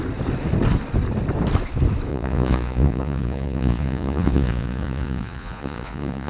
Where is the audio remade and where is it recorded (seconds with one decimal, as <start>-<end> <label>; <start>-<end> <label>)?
0.0-2.1 recorded; 2.1-6.3 remade